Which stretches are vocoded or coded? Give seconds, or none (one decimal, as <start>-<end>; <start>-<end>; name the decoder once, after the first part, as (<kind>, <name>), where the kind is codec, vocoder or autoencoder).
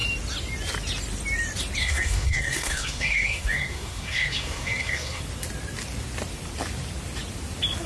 1.8-5.2 (codec, SNAC)